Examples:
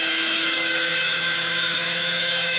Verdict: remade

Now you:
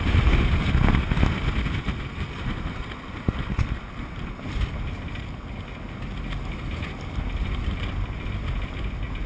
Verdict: recorded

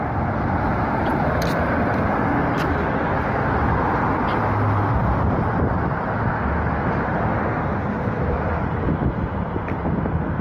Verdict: recorded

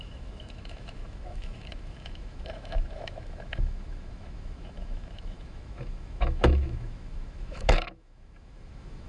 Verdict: remade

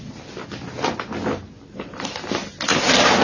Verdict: recorded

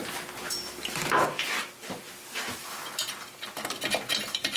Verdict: recorded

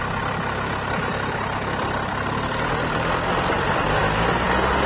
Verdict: recorded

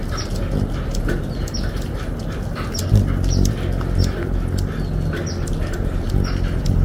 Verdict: recorded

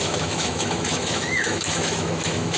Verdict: remade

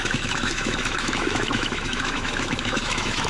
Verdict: remade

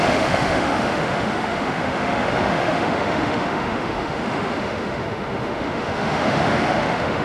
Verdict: remade